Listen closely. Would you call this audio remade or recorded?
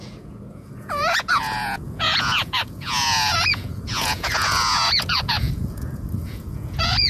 remade